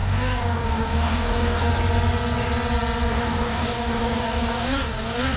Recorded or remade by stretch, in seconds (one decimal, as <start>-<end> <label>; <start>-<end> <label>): 0.0-1.7 remade; 1.7-3.1 recorded; 3.1-5.4 remade

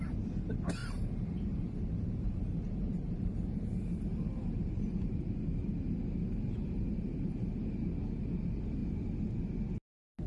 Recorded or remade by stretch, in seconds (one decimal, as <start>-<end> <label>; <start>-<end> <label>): 0.0-0.8 recorded; 0.8-5.3 remade; 5.3-6.5 recorded; 6.5-7.5 remade; 7.5-10.3 recorded

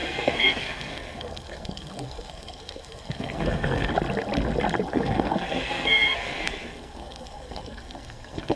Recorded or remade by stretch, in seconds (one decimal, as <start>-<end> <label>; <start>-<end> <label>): 0.0-3.9 remade; 3.9-4.9 recorded; 4.9-8.6 remade

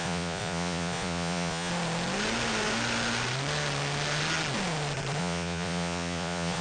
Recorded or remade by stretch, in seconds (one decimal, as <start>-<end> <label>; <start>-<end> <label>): 0.0-1.7 remade; 1.7-5.2 recorded; 5.2-6.6 remade

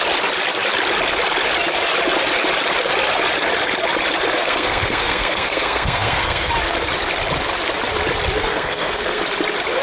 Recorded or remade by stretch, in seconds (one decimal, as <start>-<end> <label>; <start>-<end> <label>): 0.0-4.4 recorded; 4.4-6.5 remade; 6.5-8.4 recorded; 8.4-9.2 remade; 9.2-9.8 recorded

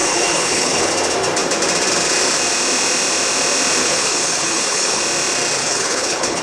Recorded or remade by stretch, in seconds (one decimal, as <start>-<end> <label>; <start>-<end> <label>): 0.0-0.9 remade; 0.9-3.8 recorded; 3.8-5.0 remade; 5.0-5.6 recorded; 5.6-6.4 remade

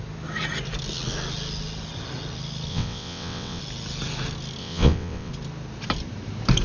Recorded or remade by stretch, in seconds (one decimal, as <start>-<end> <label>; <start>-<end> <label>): 0.0-2.7 recorded; 2.7-3.6 remade; 3.6-4.6 recorded; 4.6-5.3 remade; 5.3-6.6 recorded

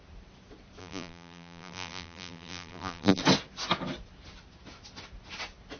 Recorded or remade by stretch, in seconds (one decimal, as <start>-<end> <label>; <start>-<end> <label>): 0.0-0.8 recorded; 0.8-3.2 remade; 3.2-5.8 recorded